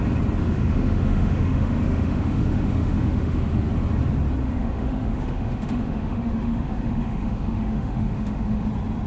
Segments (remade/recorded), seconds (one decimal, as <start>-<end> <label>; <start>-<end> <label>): 0.0-0.4 recorded; 0.4-3.7 remade; 3.7-4.4 recorded; 4.4-8.7 remade; 8.7-9.1 recorded